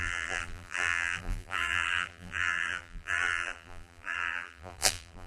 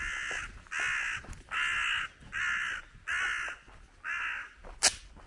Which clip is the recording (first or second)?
second